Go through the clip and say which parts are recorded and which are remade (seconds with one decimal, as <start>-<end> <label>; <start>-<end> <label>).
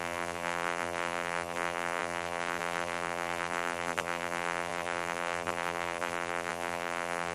0.0-7.3 remade